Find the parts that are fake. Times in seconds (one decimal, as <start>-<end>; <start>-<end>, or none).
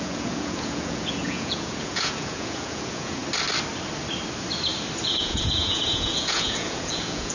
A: 0.0-3.2; 5.0-7.3